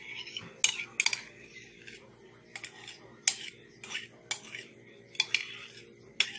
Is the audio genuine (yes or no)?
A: yes